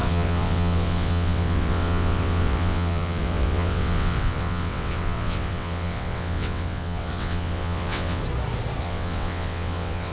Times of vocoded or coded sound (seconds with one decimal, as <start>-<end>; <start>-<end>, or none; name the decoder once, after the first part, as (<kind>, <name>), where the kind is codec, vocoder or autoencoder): 0.0-8.2 (vocoder, WaveNeXt); 8.8-10.1